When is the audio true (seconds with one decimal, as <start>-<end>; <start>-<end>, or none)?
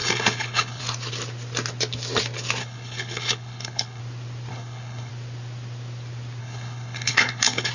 0.8-2.6; 4.0-4.5; 5.1-6.4